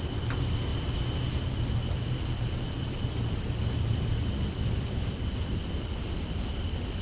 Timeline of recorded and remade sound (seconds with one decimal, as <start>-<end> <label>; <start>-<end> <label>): 0.0-7.0 recorded